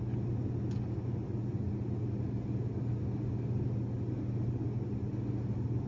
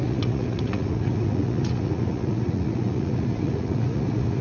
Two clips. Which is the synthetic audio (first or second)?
second